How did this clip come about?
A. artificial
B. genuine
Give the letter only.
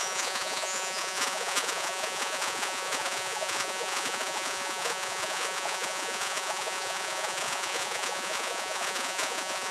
A